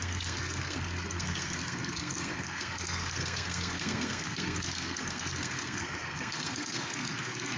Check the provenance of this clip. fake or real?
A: fake